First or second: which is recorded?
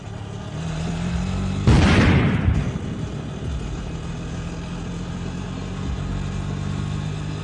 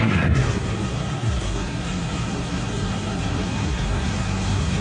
first